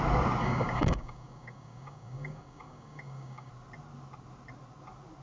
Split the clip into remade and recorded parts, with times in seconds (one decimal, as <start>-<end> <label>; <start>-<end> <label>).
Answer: 0.0-0.4 recorded; 0.4-3.5 remade; 3.5-5.2 recorded